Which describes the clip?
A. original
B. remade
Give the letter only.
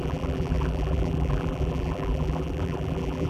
B